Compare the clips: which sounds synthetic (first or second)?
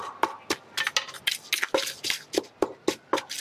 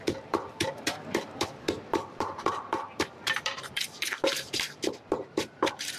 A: second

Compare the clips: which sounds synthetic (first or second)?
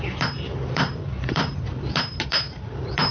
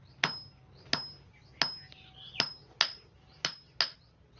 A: first